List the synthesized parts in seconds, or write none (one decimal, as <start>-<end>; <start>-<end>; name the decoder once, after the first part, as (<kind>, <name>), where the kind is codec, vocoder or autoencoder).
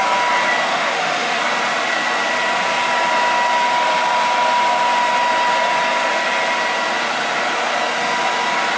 0.7-1.4 (autoencoder, DAC-VAE)